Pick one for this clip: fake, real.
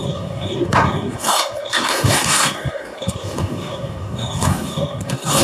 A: fake